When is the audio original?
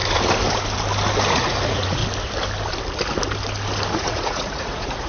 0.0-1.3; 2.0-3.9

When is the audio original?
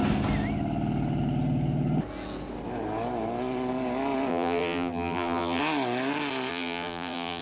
0.0-4.3; 5.6-6.5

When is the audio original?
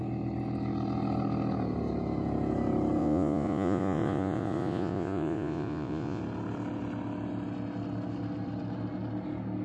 0.0-3.0; 6.2-9.6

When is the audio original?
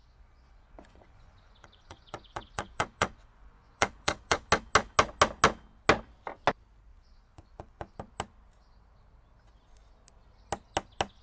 4.5-6.9; 7.9-11.2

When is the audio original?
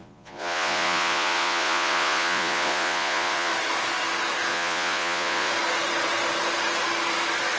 3.5-4.5; 5.5-7.6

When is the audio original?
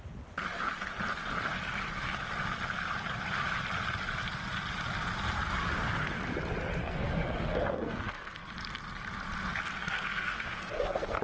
0.0-6.8; 8.5-9.8